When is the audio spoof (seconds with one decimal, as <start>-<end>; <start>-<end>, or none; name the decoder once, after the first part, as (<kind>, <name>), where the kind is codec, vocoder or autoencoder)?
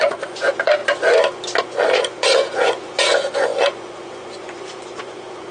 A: 0.0-0.8 (vocoder, Vocos); 1.6-5.5